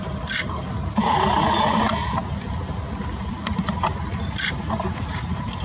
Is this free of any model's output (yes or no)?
yes